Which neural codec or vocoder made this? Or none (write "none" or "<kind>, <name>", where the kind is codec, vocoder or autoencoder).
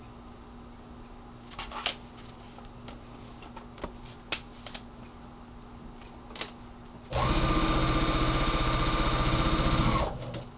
none